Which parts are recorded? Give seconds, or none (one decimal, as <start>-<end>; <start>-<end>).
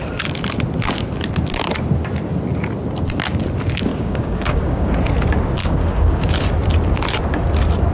0.0-3.9; 4.9-5.6; 6.3-7.9